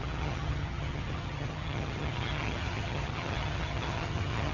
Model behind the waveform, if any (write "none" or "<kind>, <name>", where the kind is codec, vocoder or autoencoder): vocoder, HiFi-GAN